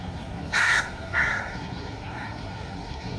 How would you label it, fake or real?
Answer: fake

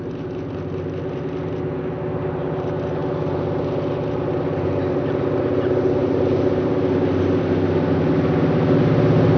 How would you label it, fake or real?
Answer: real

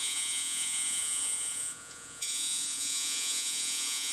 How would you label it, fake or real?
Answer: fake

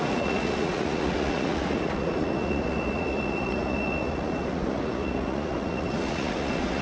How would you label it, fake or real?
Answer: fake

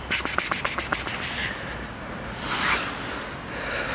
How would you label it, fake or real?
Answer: real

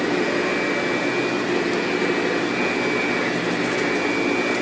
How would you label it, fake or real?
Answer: real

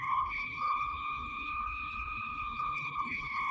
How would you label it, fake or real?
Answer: fake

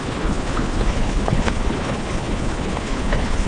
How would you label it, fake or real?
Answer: fake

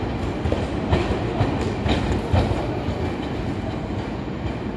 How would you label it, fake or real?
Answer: real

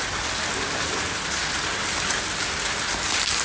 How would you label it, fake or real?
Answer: real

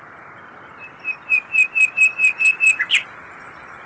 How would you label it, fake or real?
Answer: real